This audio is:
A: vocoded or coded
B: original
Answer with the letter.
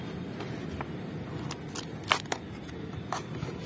B